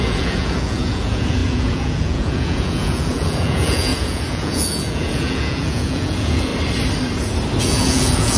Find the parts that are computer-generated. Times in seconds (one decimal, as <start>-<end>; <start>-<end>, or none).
0.0-6.5; 7.6-8.4